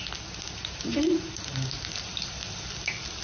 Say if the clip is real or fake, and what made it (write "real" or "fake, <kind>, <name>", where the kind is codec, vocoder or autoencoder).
real